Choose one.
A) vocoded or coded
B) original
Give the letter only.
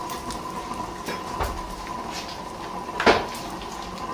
B